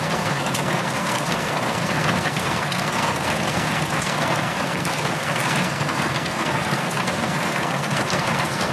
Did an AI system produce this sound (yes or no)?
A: yes